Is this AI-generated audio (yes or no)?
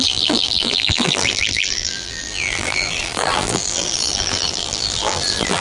yes